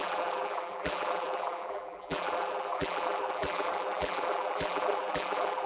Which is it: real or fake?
fake